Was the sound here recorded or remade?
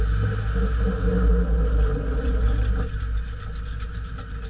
recorded